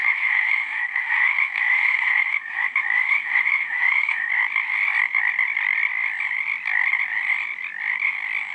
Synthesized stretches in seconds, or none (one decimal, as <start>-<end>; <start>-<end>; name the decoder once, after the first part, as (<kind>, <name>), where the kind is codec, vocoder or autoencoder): 0.0-4.3 (autoencoder, DAC-VAE)